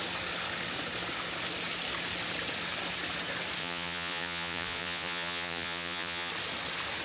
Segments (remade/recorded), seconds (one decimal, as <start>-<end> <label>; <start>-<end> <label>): 0.0-3.6 recorded; 3.6-6.3 remade; 6.3-7.0 recorded